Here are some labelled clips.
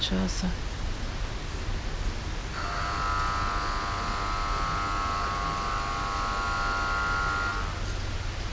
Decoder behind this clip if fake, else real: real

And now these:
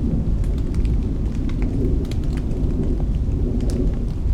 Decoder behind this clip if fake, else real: real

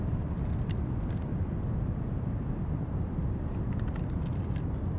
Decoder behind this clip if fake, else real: real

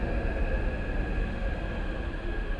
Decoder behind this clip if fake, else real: real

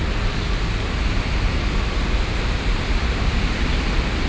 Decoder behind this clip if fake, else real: real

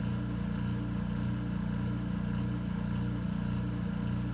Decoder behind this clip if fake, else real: real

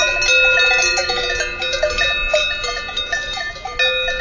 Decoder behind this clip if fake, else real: real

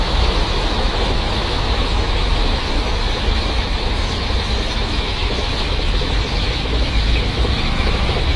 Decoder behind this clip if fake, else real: fake, autoencoder, DAC-VAE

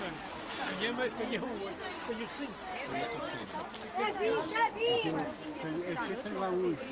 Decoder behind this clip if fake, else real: real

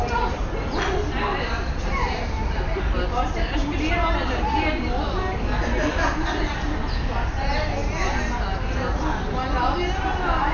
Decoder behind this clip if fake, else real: real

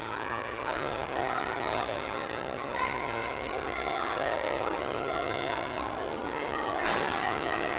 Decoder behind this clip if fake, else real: fake, vocoder, HiFi-GAN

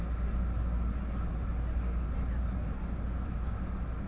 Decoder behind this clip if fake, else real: real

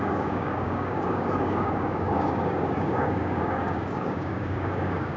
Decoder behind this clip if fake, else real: fake, codec, DAC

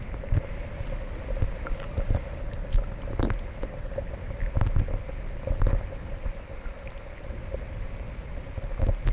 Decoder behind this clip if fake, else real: real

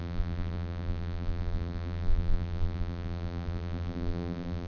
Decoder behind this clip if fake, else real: fake, vocoder, BigVGAN v2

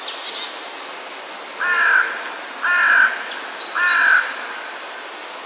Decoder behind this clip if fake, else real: real